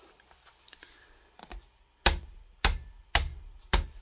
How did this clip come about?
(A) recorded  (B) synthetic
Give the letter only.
A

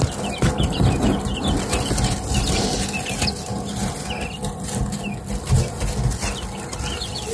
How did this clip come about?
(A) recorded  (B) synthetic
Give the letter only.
A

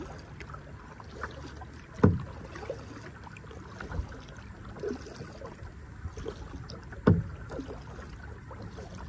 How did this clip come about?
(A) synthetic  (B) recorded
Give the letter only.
B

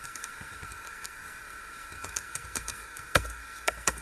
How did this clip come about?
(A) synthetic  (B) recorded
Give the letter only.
A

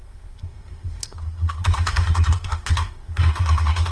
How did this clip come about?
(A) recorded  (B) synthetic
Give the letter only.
B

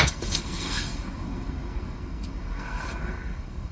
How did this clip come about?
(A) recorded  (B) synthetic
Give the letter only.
B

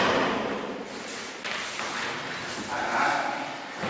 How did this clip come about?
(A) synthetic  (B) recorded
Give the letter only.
B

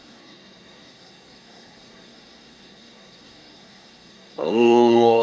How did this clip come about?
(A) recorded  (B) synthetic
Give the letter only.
B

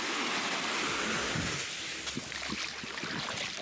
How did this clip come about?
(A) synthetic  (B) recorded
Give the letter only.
B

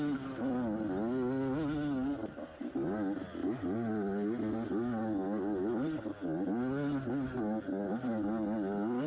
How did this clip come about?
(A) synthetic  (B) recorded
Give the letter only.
B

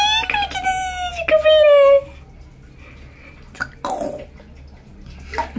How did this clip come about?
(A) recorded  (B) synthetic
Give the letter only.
A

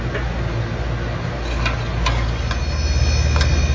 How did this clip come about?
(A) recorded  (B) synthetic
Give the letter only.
A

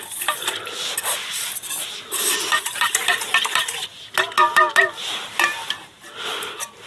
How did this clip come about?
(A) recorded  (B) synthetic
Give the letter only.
A